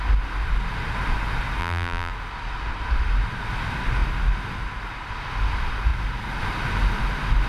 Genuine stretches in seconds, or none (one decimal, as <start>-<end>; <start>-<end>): 0.0-1.6; 2.1-7.5